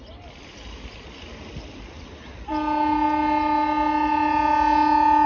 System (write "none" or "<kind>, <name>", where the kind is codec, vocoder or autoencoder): none